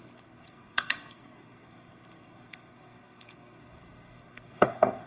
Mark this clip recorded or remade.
remade